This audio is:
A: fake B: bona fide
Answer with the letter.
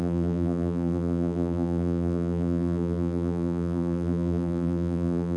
A